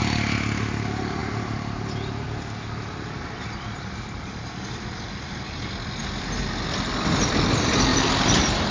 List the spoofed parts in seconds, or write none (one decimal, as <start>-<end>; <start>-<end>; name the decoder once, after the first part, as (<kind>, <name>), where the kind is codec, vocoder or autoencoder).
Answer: 7.9-8.7 (vocoder, BigVGAN v2)